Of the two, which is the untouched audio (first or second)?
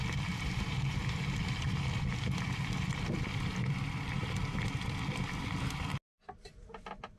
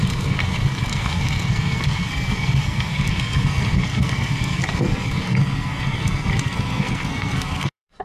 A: first